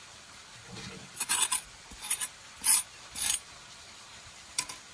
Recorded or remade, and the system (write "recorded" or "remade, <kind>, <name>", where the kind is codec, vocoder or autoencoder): remade, vocoder, BigVGAN v2